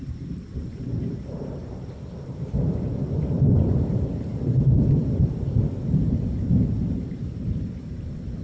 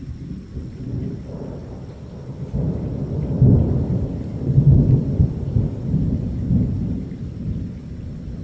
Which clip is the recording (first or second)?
second